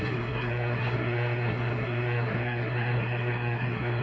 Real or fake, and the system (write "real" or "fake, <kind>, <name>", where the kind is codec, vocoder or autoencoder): fake, codec, SNAC